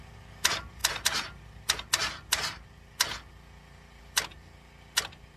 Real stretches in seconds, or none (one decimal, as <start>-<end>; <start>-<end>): 0.0-5.4

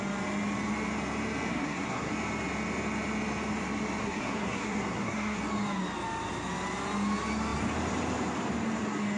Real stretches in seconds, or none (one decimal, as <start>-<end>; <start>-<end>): 0.0-1.5; 2.1-4.0; 5.4-9.2

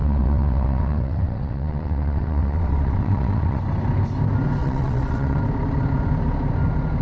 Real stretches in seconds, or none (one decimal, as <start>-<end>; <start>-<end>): 3.6-4.6; 5.4-7.0